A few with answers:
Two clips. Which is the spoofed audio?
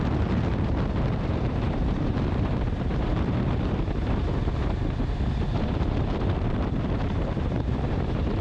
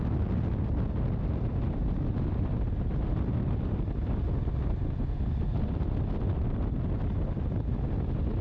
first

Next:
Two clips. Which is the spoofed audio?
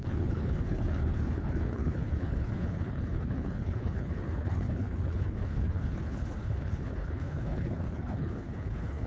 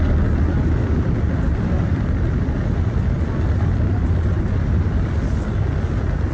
first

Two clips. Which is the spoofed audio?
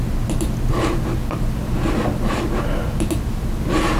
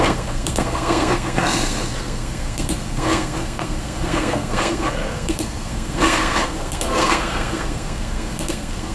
second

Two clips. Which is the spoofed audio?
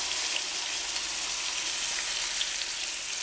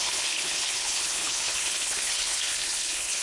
second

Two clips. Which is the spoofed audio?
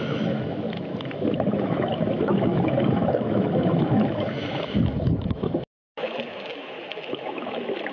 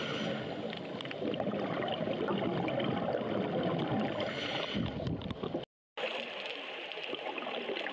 first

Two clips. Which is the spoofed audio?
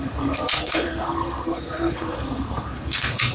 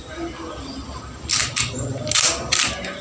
first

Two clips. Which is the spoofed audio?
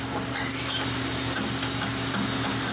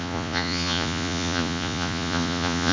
second